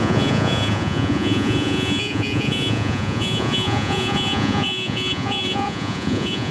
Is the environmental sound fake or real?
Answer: fake